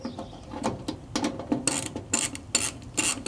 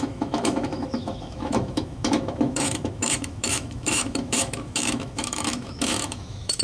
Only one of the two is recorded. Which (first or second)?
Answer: first